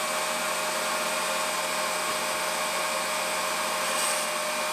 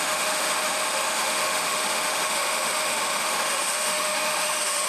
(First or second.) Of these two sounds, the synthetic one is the second